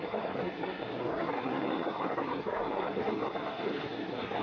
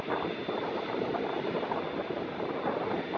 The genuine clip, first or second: second